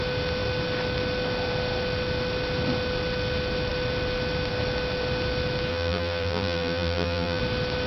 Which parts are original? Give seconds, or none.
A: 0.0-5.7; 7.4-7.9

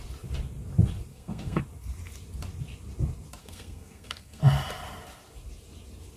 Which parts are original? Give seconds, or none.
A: 0.0-1.1; 1.6-3.4; 4.4-6.2